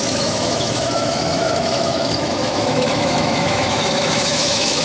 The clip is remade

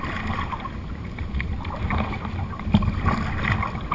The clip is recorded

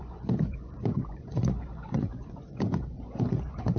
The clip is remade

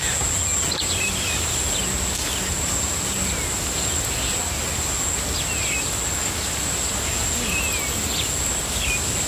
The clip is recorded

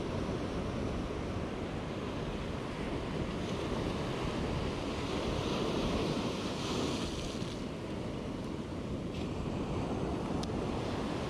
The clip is recorded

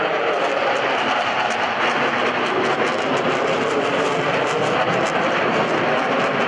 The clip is recorded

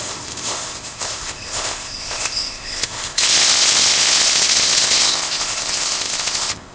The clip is remade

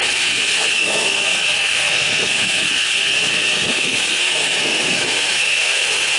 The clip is remade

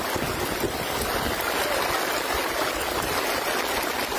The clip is recorded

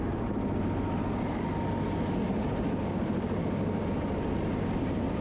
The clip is recorded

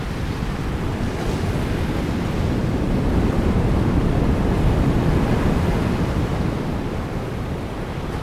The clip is remade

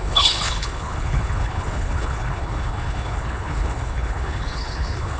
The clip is remade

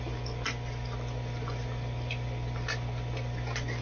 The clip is recorded